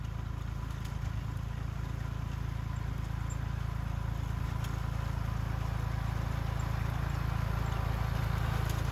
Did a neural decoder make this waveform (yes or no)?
no